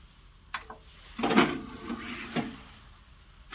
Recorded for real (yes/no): yes